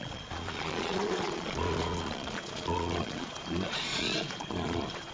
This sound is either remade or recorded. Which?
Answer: remade